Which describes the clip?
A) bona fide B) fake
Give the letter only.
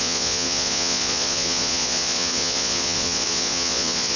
B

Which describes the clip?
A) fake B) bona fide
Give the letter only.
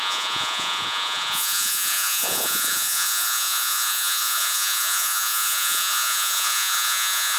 A